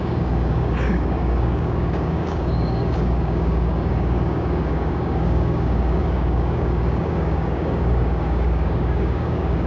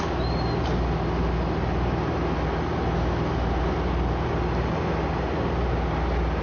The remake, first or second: first